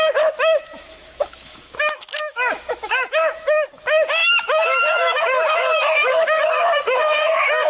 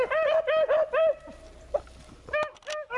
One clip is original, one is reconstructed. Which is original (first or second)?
second